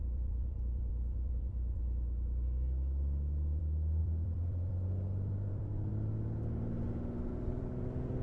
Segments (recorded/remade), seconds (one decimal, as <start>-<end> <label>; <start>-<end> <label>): 0.0-1.8 remade; 1.8-3.6 recorded; 3.6-5.9 remade; 5.9-7.3 recorded; 7.3-8.2 remade